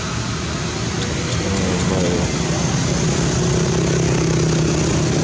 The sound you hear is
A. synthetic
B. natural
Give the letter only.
B